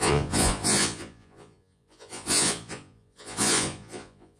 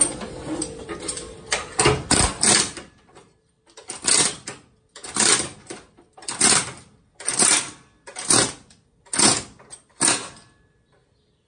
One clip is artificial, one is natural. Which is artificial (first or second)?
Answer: first